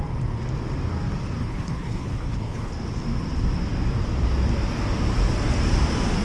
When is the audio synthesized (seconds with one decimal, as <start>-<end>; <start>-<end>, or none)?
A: 1.4-2.7